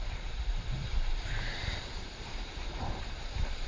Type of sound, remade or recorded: remade